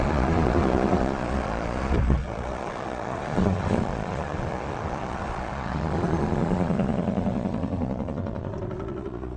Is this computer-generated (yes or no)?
yes